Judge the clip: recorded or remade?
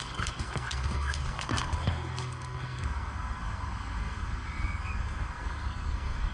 remade